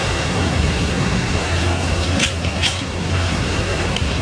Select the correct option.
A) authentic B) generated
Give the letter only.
B